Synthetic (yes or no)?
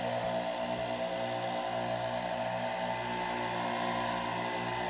no